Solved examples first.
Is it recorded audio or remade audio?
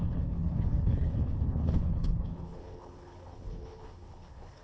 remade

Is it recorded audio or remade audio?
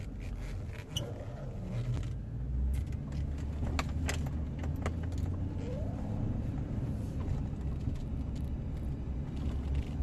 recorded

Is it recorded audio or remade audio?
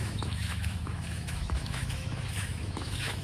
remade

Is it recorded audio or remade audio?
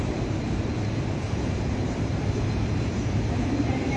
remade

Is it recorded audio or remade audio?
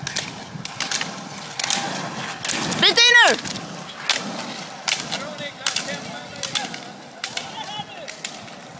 recorded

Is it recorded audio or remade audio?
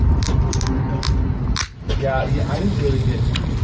recorded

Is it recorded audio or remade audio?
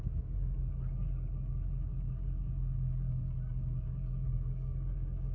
remade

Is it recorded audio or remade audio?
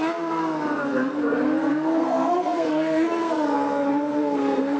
remade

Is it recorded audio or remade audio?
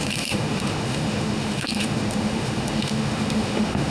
remade